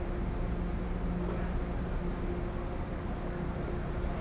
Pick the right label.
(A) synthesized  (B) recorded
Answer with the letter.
B